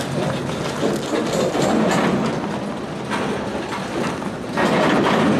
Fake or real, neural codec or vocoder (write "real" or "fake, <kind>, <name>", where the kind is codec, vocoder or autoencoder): real